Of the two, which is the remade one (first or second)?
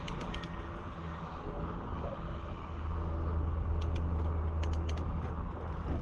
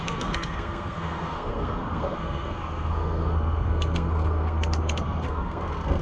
second